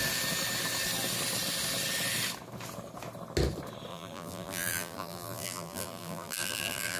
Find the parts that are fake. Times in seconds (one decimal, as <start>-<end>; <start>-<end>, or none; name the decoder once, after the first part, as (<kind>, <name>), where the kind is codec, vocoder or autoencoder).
3.9-7.0 (vocoder, BigVGAN v2)